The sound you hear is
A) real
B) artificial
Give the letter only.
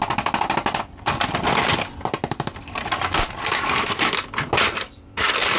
A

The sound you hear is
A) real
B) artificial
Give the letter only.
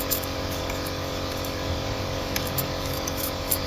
B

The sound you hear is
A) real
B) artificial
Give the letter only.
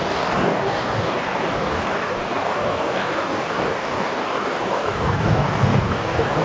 B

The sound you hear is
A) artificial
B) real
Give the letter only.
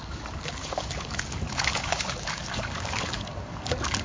A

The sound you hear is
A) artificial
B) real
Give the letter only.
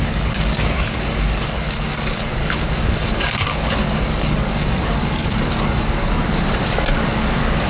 A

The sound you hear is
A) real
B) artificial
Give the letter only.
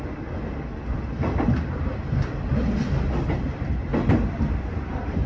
A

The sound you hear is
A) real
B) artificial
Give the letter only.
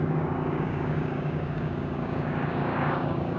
B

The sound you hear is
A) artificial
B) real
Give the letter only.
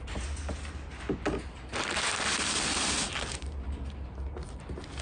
B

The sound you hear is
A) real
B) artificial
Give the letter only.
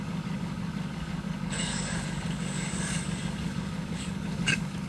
B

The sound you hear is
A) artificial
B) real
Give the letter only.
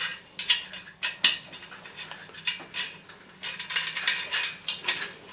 B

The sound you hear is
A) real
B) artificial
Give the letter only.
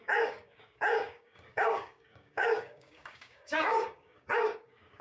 B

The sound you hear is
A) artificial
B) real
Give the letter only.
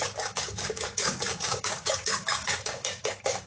A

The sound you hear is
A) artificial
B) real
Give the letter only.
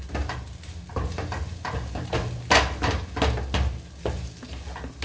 B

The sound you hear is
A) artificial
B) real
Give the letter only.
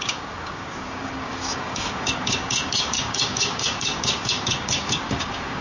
A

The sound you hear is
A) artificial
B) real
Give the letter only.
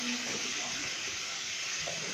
A